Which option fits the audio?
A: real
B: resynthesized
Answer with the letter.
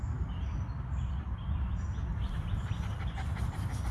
A